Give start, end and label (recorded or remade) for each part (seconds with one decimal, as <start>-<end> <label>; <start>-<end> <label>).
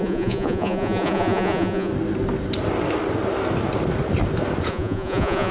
0.0-1.9 remade; 1.9-4.7 recorded; 4.7-5.5 remade